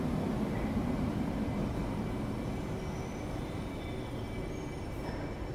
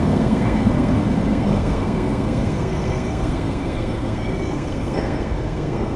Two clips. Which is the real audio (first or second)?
first